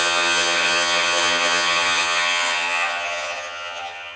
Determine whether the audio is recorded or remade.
remade